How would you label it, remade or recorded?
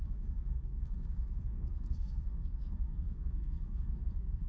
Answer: remade